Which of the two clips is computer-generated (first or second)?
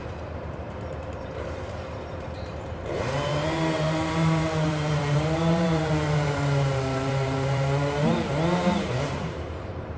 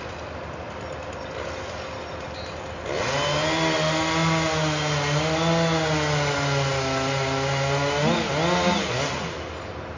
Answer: first